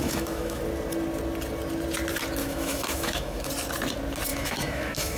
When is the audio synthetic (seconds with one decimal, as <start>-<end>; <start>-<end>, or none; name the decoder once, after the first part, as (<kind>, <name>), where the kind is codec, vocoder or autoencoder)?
0.0-0.6 (autoencoder, DAC-VAE); 2.4-3.5; 4.3-5.2